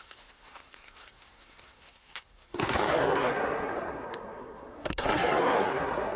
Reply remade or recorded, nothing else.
remade